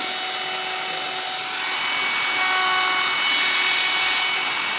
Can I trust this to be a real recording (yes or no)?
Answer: yes